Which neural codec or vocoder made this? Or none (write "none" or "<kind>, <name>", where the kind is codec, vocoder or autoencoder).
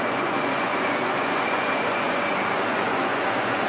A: vocoder, Vocos